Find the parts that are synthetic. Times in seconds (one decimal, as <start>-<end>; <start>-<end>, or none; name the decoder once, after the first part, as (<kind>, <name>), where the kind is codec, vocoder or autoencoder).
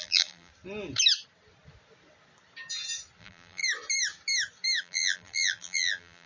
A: 0.0-0.5 (vocoder, BigVGAN v2); 3.2-3.6; 4.8-6.3